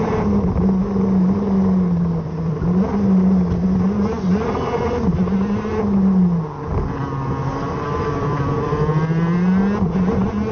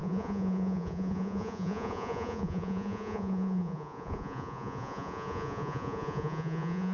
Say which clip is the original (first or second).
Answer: first